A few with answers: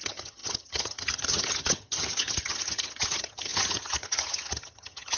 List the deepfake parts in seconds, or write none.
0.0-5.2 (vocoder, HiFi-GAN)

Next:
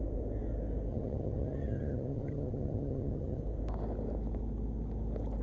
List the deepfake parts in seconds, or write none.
0.9-3.4 (vocoder, HiFi-GAN)

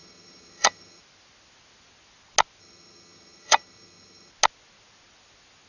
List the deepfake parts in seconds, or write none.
0.0-1.0 (vocoder, HiFi-GAN); 2.6-4.3

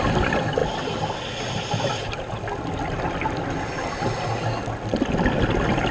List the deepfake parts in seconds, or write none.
none

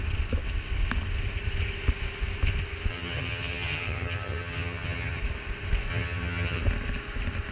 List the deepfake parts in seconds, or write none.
2.9-5.2 (vocoder, HiFi-GAN); 5.9-6.6

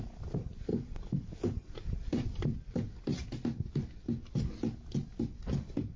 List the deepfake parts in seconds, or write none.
none